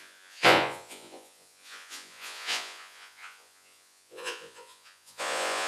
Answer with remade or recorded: remade